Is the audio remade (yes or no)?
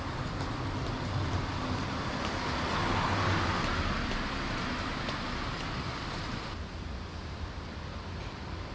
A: no